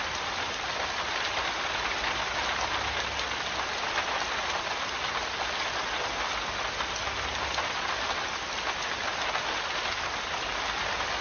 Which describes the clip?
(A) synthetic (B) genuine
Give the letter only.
B